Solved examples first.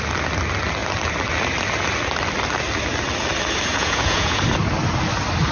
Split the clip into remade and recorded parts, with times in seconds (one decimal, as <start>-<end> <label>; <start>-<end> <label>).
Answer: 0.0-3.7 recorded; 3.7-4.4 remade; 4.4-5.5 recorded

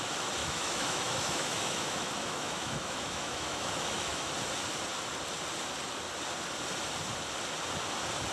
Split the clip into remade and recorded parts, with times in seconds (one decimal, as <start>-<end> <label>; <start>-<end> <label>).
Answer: 0.0-0.4 recorded; 0.4-4.3 remade; 4.3-8.3 recorded

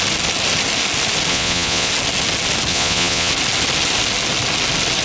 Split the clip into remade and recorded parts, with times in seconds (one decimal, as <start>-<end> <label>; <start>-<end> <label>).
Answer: 0.0-1.3 recorded; 1.3-1.9 remade; 1.9-2.7 recorded; 2.7-3.3 remade; 3.3-5.0 recorded

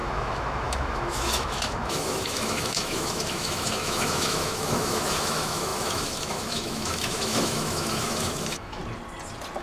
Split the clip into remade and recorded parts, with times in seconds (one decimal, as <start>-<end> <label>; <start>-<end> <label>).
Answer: 0.0-8.8 remade; 8.8-9.6 recorded

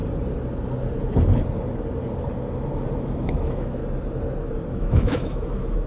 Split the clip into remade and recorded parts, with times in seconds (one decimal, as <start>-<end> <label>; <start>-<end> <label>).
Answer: 0.0-3.0 recorded; 3.0-3.8 remade; 3.8-4.7 recorded; 4.7-5.9 remade

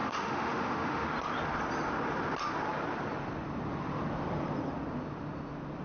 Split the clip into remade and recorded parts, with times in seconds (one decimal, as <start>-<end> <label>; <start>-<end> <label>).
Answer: 0.0-1.1 remade; 1.1-5.8 recorded

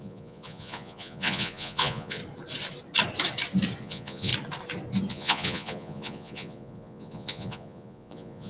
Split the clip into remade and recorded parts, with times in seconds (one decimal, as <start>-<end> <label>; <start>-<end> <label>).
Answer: 0.0-2.2 remade; 2.2-3.8 recorded; 3.8-4.3 remade; 4.3-5.1 recorded; 5.1-8.5 remade